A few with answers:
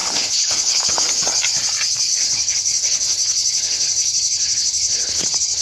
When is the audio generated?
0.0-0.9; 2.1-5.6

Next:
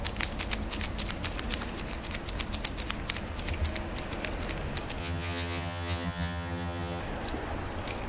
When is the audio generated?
5.0-7.0